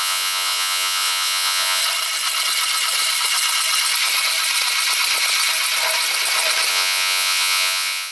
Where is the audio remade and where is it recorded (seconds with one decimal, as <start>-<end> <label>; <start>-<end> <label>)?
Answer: 0.0-1.8 remade; 1.8-6.7 recorded; 6.7-8.1 remade